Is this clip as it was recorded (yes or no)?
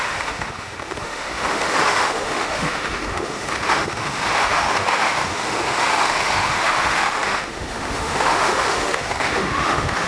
no